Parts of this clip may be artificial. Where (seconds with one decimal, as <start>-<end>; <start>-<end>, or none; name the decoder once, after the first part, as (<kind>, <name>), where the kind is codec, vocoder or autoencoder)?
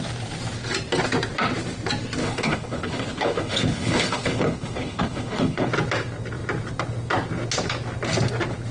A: 2.2-5.7 (codec, HILCodec)